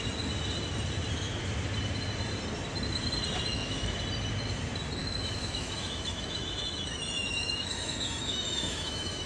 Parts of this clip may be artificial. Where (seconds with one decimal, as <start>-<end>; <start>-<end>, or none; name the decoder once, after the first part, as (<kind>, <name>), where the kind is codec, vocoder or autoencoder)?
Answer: 3.5-4.0 (autoencoder, DAC-VAE); 5.0-9.3